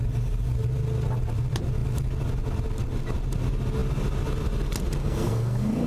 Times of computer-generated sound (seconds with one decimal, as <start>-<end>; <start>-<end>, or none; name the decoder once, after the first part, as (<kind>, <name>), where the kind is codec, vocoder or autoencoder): 5.0-5.9 (codec, SNAC)